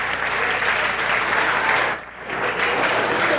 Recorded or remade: recorded